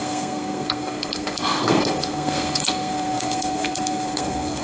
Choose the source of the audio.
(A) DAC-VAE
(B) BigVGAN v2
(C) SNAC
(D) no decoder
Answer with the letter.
C